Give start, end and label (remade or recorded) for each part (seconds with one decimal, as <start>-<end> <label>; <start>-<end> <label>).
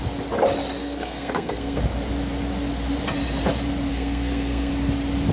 0.0-0.8 recorded; 0.8-1.8 remade; 1.8-3.9 recorded; 3.9-4.7 remade; 4.7-5.3 recorded